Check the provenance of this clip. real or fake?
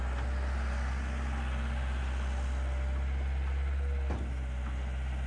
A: real